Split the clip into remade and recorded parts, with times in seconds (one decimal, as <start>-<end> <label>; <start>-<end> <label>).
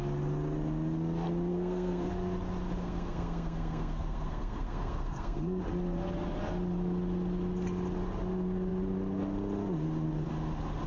0.0-1.5 recorded; 1.5-2.1 remade; 2.1-2.8 recorded; 2.8-5.6 remade; 5.6-10.9 recorded